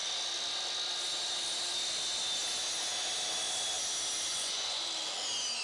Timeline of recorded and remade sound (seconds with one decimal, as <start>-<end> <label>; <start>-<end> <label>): 0.0-4.3 recorded; 4.3-4.9 remade; 4.9-5.6 recorded